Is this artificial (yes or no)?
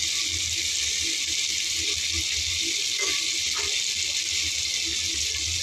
no